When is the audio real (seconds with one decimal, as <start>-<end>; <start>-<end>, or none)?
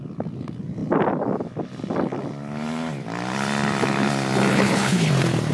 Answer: 0.0-4.5; 5.1-5.5